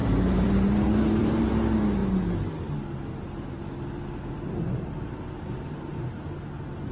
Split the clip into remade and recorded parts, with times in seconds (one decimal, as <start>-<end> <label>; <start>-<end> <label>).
0.0-1.5 remade; 1.5-6.9 recorded